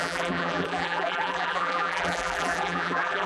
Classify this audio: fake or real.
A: fake